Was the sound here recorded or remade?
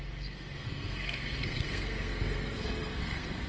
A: remade